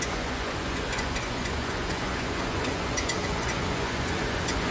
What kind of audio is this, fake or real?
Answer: fake